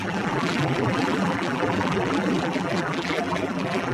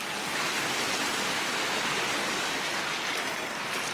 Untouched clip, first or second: second